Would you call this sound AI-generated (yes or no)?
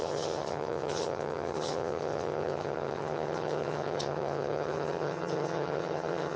yes